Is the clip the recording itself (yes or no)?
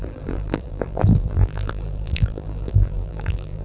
no